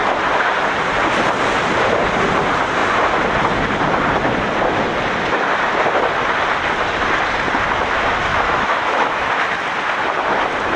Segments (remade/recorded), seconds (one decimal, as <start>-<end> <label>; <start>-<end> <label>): 0.0-8.3 recorded; 8.3-9.3 remade; 9.3-10.8 recorded